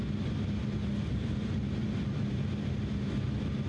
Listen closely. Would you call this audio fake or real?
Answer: real